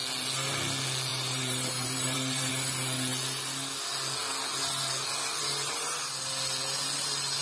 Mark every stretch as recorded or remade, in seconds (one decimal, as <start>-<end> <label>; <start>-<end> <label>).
0.0-1.1 recorded; 1.1-2.5 remade; 2.5-7.4 recorded